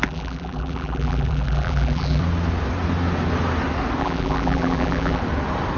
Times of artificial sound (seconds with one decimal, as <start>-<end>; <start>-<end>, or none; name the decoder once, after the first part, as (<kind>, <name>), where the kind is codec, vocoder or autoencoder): 0.0-2.2 (vocoder, BigVGAN v2); 4.0-5.2